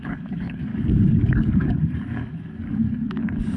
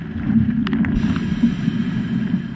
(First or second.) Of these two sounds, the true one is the second